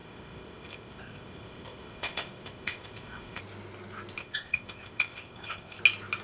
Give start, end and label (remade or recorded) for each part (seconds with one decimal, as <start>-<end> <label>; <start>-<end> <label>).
0.0-3.4 remade; 3.4-4.2 recorded; 4.2-5.8 remade; 5.8-6.2 recorded